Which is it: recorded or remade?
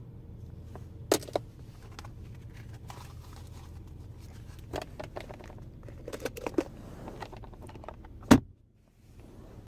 recorded